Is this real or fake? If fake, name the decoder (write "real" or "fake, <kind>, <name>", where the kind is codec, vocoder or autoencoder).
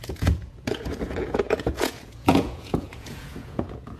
fake, vocoder, Vocos